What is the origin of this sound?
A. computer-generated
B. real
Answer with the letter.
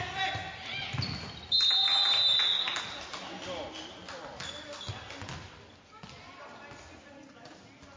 B